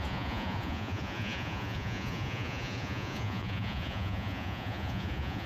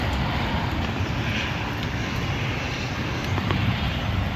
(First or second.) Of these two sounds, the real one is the second